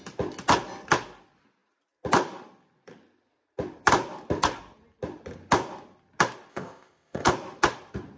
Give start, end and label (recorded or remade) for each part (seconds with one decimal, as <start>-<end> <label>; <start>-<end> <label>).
0.0-6.5 recorded; 6.5-7.3 remade; 7.3-8.2 recorded